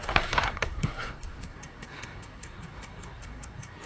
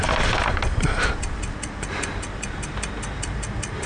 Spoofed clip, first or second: first